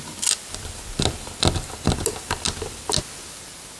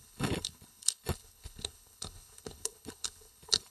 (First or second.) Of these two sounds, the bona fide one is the first